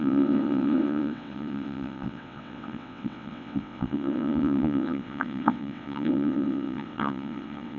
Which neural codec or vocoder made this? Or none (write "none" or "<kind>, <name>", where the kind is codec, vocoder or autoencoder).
vocoder, WaveNeXt